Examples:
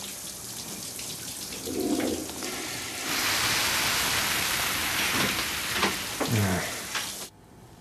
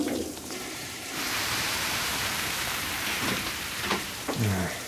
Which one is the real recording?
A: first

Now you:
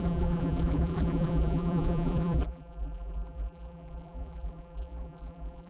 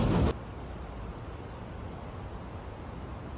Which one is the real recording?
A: second